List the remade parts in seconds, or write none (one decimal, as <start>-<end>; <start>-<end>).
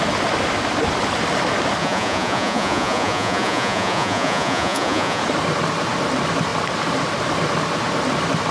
1.8-5.2